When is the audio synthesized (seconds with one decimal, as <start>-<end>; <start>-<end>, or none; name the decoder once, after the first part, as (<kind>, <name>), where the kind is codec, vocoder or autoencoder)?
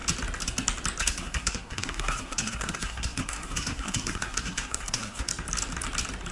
1.0-5.3 (codec, SNAC)